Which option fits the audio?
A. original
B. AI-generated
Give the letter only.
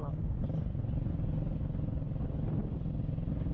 A